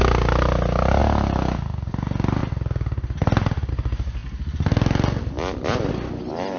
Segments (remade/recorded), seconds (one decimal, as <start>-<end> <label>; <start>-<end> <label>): 0.0-6.6 recorded